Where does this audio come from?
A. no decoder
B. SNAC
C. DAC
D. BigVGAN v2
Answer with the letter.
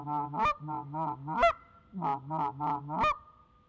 A